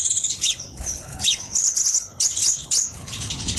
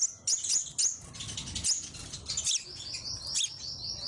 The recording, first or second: second